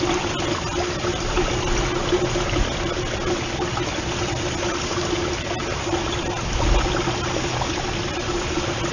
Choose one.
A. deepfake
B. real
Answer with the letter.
B